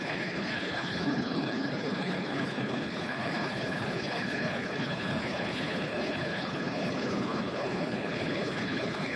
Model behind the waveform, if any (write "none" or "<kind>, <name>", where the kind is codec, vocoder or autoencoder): codec, HILCodec